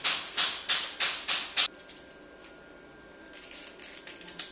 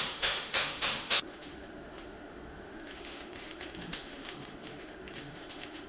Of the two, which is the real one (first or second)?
first